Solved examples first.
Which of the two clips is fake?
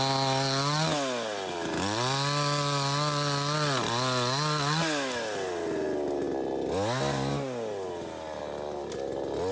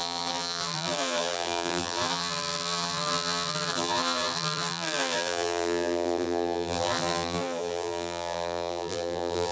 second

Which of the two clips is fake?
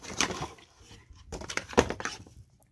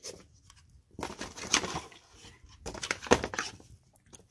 first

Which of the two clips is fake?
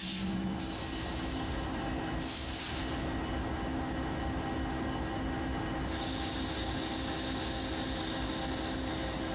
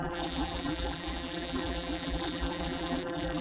second